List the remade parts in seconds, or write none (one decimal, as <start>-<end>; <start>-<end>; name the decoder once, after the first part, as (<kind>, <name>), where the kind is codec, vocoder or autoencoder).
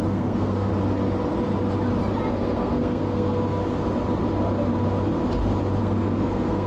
0.0-0.7 (codec, SNAC); 2.3-3.6; 5.8-6.7